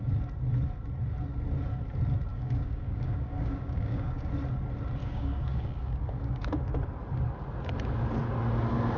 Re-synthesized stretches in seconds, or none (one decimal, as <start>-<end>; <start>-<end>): 2.3-4.3; 5.0-6.7